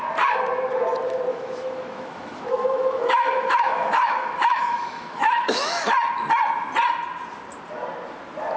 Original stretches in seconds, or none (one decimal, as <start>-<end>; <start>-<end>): 0.0-1.3; 5.9-8.6